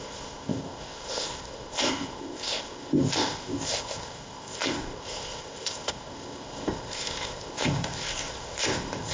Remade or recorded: remade